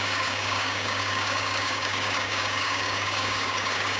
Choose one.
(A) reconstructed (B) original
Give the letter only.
A